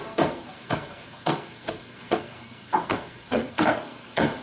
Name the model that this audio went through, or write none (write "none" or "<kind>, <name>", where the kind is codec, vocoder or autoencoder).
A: codec, SNAC